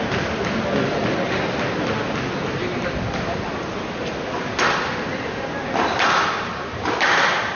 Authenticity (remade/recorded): recorded